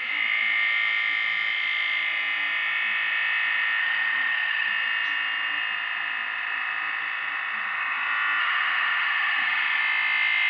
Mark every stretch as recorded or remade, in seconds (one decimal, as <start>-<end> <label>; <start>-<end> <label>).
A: 0.0-3.8 recorded; 3.8-4.7 remade; 4.7-8.4 recorded; 8.4-9.8 remade; 9.8-10.5 recorded